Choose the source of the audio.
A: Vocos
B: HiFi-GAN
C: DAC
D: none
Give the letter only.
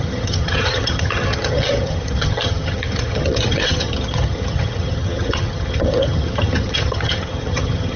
B